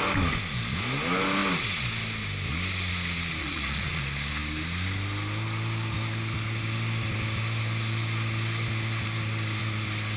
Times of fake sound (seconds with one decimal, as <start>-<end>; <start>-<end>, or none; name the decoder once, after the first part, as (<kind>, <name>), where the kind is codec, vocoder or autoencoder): 3.4-4.0 (vocoder, Vocos)